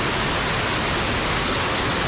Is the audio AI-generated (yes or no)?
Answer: no